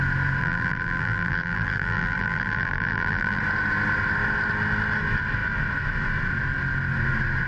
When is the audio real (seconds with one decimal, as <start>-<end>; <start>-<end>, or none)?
0.0-0.4; 3.4-7.5